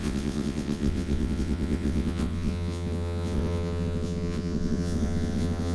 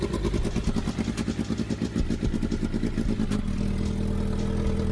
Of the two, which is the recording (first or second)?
second